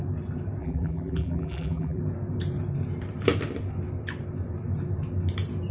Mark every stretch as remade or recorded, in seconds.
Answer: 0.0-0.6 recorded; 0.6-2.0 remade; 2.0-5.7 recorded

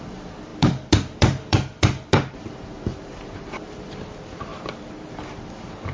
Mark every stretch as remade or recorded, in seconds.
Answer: 0.0-4.5 remade; 4.5-5.1 recorded; 5.1-5.9 remade

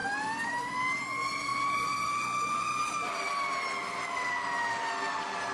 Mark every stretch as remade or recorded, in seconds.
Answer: 0.0-0.8 remade; 0.8-1.5 recorded; 1.5-4.7 remade; 4.7-5.5 recorded